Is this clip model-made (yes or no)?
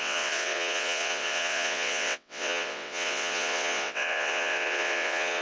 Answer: yes